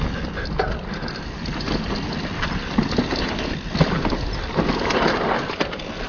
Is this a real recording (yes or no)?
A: yes